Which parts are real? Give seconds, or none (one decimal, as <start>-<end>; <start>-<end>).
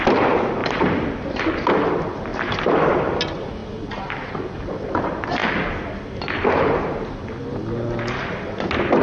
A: 0.0-0.6; 1.4-2.3; 2.8-9.0